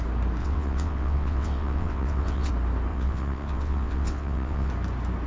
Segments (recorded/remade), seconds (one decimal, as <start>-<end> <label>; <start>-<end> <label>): 0.0-0.4 recorded; 0.4-2.5 remade; 2.5-2.9 recorded; 2.9-4.7 remade; 4.7-5.3 recorded